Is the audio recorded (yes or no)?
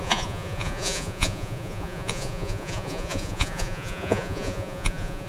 no